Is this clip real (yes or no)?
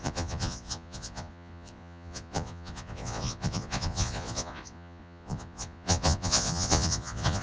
no